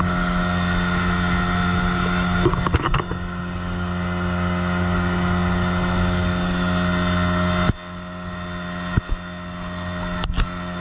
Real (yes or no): yes